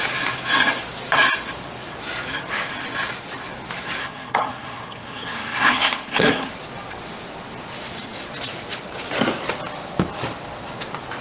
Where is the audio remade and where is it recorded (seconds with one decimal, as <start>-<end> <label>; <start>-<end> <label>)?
0.0-4.0 recorded; 4.0-6.5 remade; 6.5-11.2 recorded